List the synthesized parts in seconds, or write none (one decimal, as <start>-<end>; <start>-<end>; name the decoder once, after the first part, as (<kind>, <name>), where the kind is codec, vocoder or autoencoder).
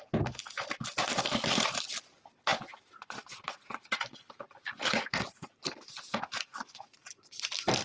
none